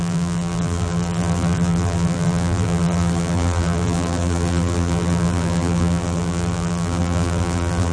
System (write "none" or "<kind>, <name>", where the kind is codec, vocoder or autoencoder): vocoder, BigVGAN v2